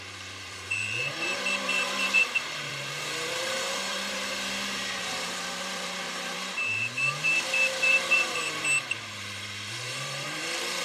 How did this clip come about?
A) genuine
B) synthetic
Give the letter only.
B